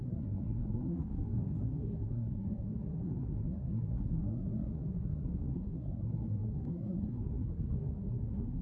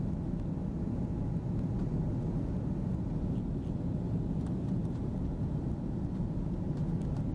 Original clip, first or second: second